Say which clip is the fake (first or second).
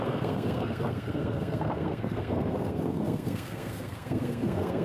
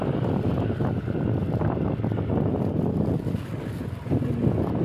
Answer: first